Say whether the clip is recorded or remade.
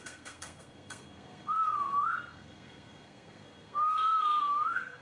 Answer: remade